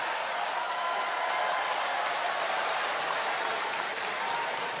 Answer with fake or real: real